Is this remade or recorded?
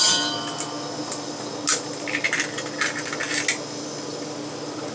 recorded